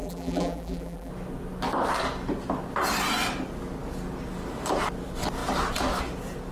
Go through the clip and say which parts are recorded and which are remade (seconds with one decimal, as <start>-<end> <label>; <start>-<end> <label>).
0.0-1.1 remade; 1.1-6.5 recorded